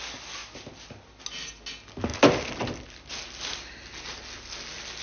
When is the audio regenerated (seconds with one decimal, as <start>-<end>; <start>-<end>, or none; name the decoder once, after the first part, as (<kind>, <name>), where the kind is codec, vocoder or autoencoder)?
none